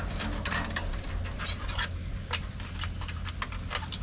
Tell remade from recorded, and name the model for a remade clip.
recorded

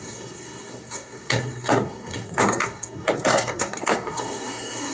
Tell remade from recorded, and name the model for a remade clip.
remade, codec, SNAC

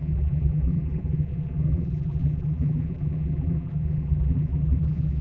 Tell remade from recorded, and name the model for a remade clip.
remade, vocoder, BigVGAN v2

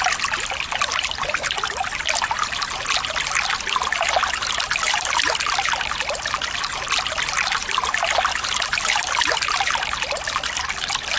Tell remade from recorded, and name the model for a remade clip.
recorded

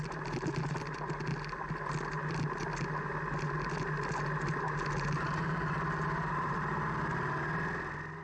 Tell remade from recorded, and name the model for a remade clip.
recorded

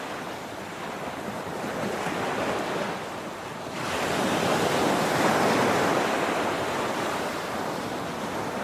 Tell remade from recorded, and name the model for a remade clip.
recorded